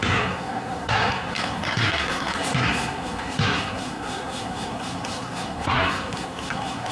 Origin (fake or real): fake